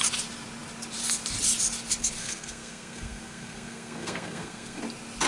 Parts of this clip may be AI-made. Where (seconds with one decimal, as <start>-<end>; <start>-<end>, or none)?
2.2-4.8